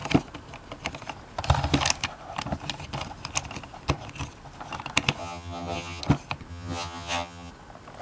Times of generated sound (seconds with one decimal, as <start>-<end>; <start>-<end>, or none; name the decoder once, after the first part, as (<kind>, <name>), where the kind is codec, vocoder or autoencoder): 5.2-6.0 (vocoder, HiFi-GAN); 6.5-7.5